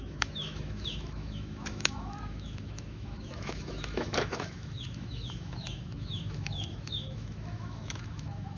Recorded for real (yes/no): no